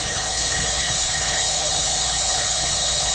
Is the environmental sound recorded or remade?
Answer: remade